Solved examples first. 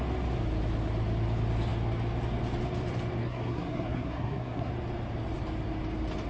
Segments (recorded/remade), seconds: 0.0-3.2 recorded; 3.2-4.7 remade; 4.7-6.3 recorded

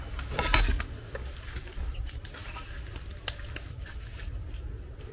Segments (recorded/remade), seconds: 0.0-5.1 recorded

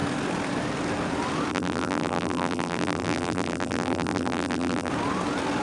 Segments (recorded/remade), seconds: 0.0-1.5 recorded; 1.5-4.9 remade; 4.9-5.6 recorded

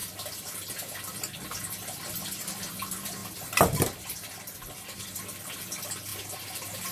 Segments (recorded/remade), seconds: 0.0-2.7 remade; 2.7-3.2 recorded; 3.2-5.2 remade; 5.2-6.9 recorded

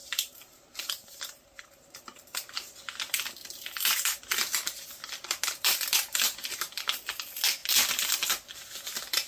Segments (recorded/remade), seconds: 0.0-2.7 remade; 2.7-9.3 recorded